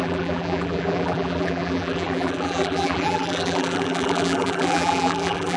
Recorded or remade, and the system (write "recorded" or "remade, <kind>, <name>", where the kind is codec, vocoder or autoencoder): remade, vocoder, BigVGAN v2